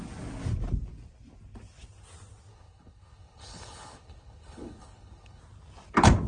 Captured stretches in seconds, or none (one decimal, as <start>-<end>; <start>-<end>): 0.0-2.5; 5.4-6.3